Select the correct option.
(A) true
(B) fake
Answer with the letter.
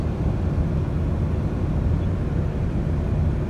A